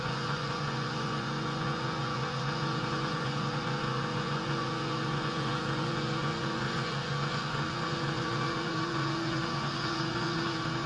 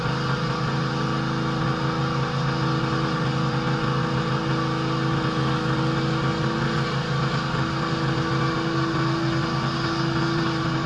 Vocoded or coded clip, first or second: first